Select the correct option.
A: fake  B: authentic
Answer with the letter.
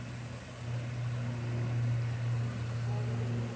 B